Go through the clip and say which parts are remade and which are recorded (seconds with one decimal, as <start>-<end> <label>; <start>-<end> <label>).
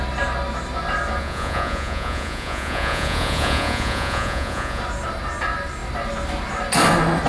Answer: 0.0-1.2 recorded; 1.2-4.8 remade; 4.8-7.3 recorded